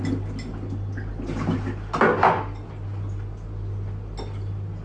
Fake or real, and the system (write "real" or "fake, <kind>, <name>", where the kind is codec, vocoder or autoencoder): real